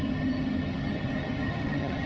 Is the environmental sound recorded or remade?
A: remade